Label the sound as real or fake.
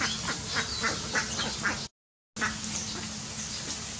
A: real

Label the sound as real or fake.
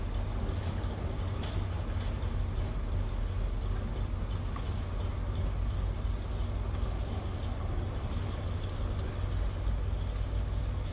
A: real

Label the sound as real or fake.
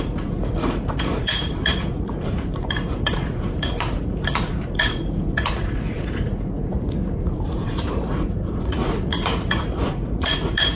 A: fake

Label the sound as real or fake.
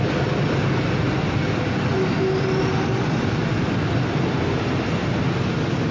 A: real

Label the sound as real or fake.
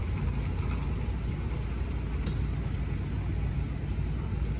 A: real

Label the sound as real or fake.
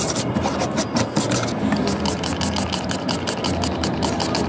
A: real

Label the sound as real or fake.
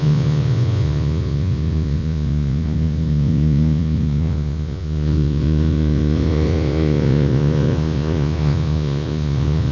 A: fake